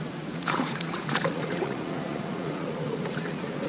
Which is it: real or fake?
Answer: fake